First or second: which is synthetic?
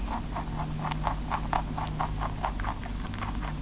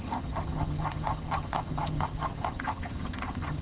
second